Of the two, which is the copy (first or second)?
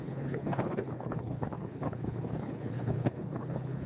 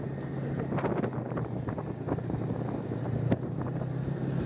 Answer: first